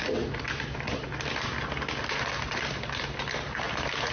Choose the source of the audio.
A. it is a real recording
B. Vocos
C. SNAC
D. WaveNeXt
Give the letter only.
A